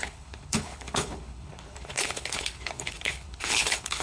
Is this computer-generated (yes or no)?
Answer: yes